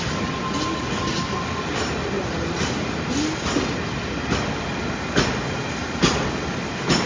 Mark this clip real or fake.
real